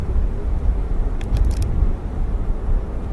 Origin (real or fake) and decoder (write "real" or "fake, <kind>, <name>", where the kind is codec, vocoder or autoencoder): fake, vocoder, BigVGAN v2